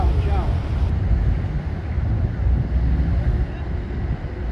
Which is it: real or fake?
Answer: real